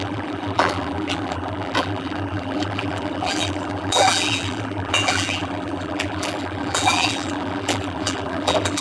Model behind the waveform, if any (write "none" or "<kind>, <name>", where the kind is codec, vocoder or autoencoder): vocoder, BigVGAN v2